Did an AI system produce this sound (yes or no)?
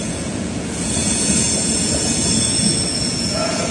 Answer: yes